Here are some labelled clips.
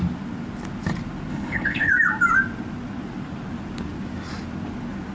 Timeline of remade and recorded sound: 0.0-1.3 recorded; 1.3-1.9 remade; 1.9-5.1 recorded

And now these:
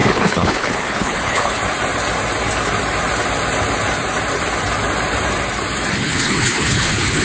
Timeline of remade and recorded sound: 0.0-1.6 remade; 1.6-5.9 recorded; 5.9-7.2 remade

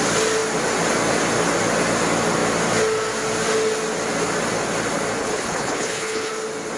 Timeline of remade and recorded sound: 0.0-5.2 recorded; 5.2-6.3 remade; 6.3-6.8 recorded